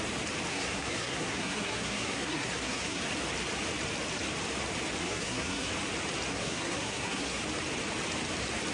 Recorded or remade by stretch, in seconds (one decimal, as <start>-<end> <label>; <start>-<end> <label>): 0.0-0.5 recorded; 0.5-3.0 remade; 3.0-5.0 recorded; 5.0-5.7 remade; 5.7-6.3 recorded; 6.3-7.4 remade; 7.4-8.7 recorded